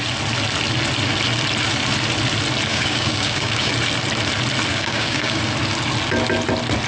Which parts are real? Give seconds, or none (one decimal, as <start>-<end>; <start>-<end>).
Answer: 0.0-2.7; 3.7-4.7; 5.4-6.9